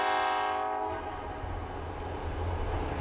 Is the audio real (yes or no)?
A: yes